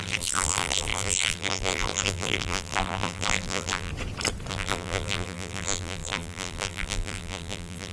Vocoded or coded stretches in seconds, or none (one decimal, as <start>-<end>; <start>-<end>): 0.0-3.9; 4.5-7.9